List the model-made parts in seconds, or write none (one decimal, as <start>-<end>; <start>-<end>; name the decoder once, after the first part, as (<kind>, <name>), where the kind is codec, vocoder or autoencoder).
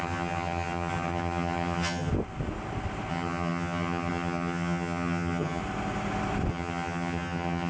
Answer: 0.0-2.1 (vocoder, HiFi-GAN); 3.1-5.6; 6.5-7.7